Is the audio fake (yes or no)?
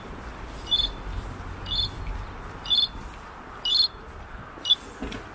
no